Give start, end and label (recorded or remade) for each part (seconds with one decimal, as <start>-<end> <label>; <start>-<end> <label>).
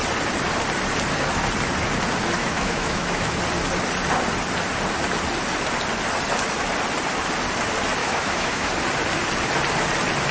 0.0-2.4 recorded; 2.4-3.4 remade; 3.4-8.0 recorded; 8.0-8.7 remade; 8.7-10.3 recorded